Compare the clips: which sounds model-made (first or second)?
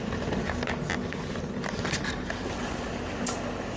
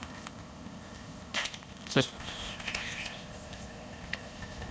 second